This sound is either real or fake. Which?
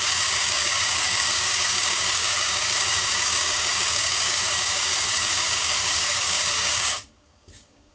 fake